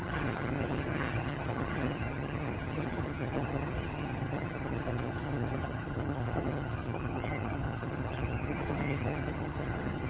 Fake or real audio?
fake